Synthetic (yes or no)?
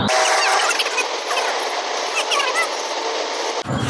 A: no